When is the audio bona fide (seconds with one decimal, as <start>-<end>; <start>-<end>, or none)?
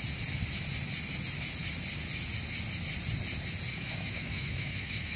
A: 0.0-3.7